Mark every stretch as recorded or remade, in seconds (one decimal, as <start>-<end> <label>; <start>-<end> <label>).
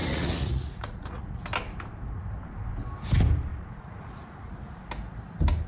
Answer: 0.0-1.4 remade; 1.4-3.5 recorded; 3.5-4.5 remade; 4.5-5.7 recorded